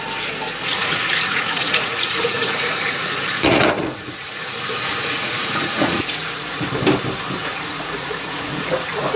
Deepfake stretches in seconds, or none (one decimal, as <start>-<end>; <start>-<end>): 0.7-4.6; 5.0-6.7; 7.4-9.2